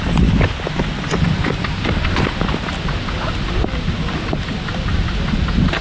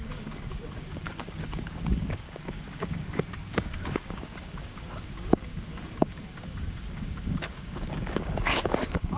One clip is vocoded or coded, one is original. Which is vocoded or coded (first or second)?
second